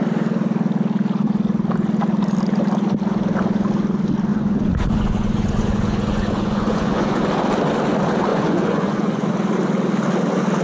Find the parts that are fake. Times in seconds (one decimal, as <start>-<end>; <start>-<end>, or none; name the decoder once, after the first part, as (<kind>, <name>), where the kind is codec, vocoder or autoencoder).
4.3-7.2 (vocoder, Vocos); 8.3-9.3